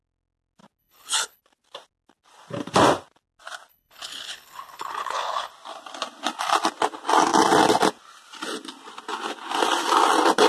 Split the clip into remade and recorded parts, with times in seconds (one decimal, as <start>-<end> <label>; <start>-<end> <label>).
0.0-0.8 recorded; 0.8-1.4 remade; 1.4-3.7 recorded; 3.7-5.5 remade; 5.5-10.5 recorded